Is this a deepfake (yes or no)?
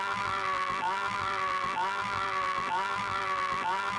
yes